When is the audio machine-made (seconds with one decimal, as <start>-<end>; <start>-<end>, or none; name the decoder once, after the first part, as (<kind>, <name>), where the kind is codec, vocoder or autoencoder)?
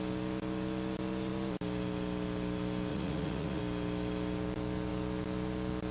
2.9-3.6 (vocoder, Vocos)